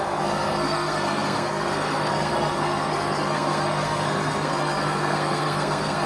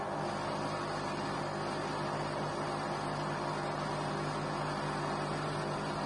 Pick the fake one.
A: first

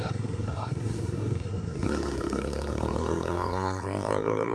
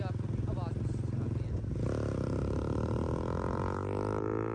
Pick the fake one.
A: first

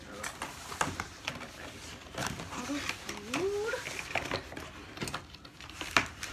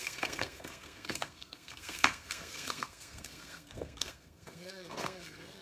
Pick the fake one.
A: second